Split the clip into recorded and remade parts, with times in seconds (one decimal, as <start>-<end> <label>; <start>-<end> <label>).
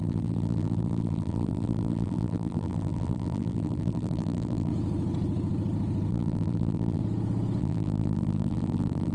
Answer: 0.0-4.7 remade; 4.7-6.1 recorded; 6.1-7.0 remade; 7.0-7.6 recorded; 7.6-9.1 remade